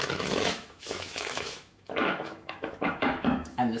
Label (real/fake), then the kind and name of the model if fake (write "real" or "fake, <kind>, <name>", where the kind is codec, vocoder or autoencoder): fake, autoencoder, DAC-VAE